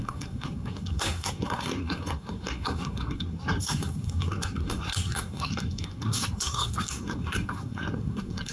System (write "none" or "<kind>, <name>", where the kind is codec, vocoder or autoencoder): codec, SNAC